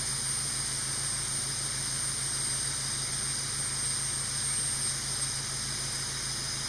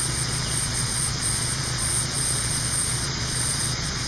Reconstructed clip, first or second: second